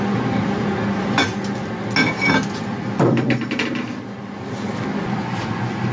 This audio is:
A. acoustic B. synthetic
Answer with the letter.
A